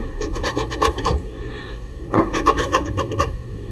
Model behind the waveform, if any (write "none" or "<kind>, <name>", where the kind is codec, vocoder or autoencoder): codec, SNAC